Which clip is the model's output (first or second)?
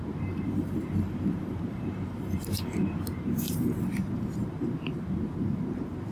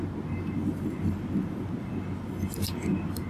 first